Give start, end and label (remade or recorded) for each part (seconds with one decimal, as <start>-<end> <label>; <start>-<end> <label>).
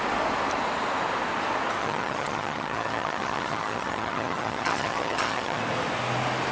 0.0-1.8 recorded; 1.8-5.6 remade; 5.6-6.5 recorded